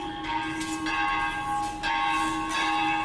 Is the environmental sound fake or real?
real